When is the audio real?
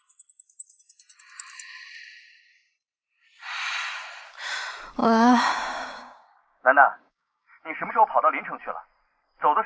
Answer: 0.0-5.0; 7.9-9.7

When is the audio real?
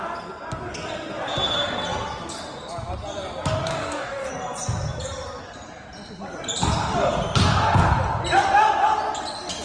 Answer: 0.0-3.7; 4.3-9.6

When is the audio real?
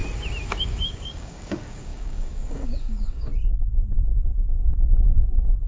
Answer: 0.0-0.6; 3.3-5.7